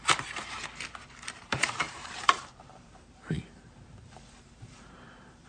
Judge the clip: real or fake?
fake